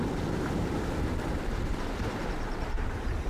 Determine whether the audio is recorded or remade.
remade